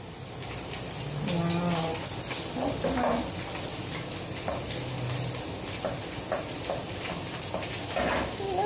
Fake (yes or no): no